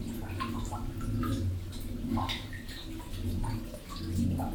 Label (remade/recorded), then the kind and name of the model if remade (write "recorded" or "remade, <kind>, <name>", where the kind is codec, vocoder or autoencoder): recorded